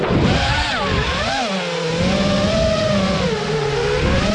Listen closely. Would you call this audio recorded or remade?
recorded